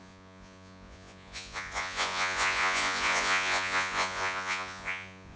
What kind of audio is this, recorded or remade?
remade